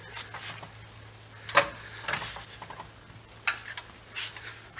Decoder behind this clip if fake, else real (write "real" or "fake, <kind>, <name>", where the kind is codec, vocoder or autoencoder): real